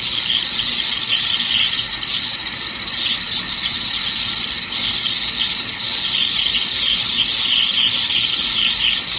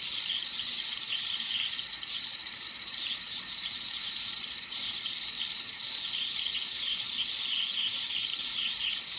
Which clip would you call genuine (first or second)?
first